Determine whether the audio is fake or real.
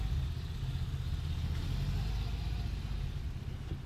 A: real